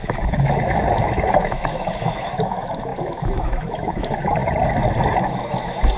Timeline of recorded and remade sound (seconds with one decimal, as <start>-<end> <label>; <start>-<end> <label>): 0.0-4.4 remade; 4.4-5.1 recorded; 5.1-6.0 remade